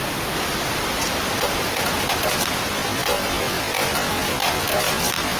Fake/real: real